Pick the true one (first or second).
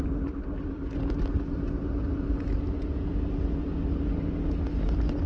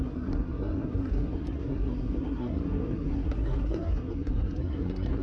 first